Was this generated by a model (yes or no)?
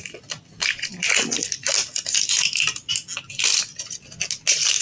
no